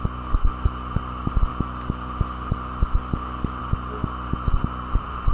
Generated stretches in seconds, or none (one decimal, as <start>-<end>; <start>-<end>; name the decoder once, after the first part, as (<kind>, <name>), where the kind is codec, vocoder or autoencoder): 0.0-1.5 (vocoder, BigVGAN v2); 3.6-5.3